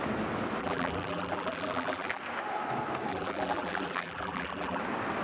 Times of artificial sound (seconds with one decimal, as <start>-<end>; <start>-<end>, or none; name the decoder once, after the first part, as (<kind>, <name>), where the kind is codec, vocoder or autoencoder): 0.6-2.2 (vocoder, BigVGAN v2); 3.1-4.8